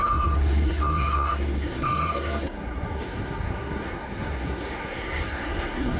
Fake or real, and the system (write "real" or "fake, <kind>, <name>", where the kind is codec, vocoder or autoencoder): fake, codec, SNAC